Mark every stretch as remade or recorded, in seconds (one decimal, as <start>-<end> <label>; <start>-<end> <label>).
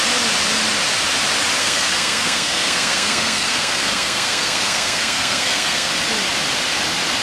0.0-1.6 recorded; 1.6-5.9 remade; 5.9-7.2 recorded